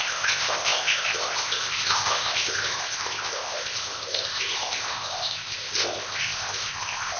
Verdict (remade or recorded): remade